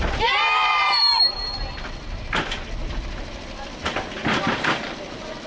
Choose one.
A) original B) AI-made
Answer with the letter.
B